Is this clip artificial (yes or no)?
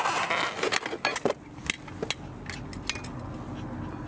no